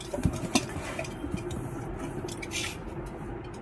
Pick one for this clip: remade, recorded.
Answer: recorded